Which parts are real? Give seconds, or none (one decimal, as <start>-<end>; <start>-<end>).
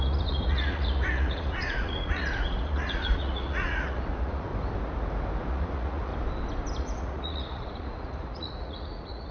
4.5-5.5; 6.1-6.8